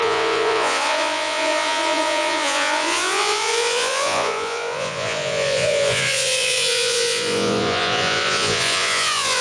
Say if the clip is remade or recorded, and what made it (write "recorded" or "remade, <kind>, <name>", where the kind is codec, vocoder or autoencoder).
remade, vocoder, Vocos